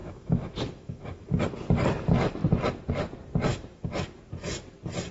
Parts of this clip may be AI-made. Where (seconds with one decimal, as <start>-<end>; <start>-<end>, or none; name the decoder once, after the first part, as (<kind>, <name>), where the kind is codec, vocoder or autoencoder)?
0.0-1.4 (autoencoder, DAC-VAE); 3.5-4.2